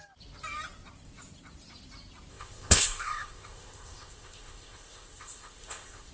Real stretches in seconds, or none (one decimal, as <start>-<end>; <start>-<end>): 0.0-2.3